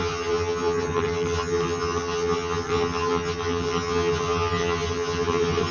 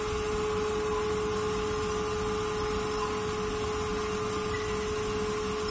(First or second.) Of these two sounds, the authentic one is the second